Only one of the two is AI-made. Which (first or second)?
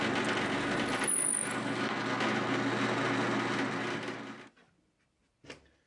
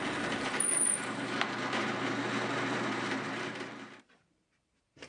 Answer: second